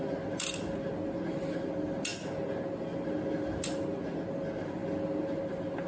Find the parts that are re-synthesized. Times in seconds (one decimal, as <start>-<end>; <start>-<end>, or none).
none